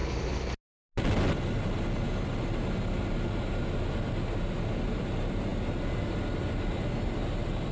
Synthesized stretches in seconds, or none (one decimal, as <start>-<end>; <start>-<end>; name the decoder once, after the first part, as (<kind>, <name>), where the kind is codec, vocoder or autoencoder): none